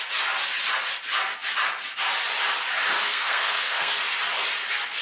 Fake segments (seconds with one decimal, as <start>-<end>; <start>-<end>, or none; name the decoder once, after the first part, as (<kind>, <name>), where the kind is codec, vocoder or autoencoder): 3.1-3.9 (codec, SNAC)